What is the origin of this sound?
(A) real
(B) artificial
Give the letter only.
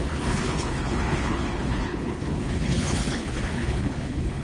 B